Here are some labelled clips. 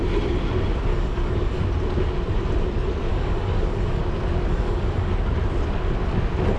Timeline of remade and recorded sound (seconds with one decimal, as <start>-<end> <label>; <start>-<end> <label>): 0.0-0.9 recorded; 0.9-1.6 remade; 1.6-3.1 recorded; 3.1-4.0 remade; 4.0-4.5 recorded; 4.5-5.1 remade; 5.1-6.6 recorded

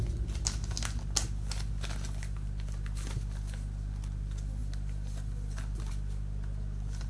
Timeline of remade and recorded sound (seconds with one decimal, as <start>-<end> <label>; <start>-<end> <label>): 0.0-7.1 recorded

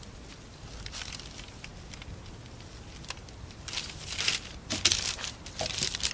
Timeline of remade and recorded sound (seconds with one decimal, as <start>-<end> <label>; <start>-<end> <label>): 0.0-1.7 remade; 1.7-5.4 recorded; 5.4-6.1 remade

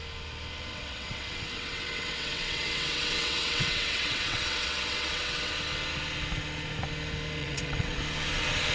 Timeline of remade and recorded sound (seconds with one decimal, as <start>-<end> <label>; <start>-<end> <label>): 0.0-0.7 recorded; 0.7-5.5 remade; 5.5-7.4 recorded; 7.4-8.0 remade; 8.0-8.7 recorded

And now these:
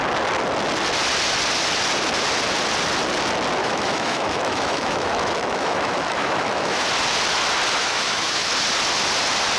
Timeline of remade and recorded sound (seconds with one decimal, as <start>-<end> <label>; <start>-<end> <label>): 0.0-3.6 recorded; 3.6-6.9 remade; 6.9-7.8 recorded; 7.8-8.5 remade; 8.5-9.6 recorded